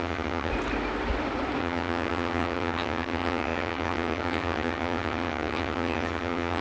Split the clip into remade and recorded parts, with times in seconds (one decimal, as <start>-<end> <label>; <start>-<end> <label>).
0.0-0.5 remade; 0.5-1.6 recorded; 1.6-6.6 remade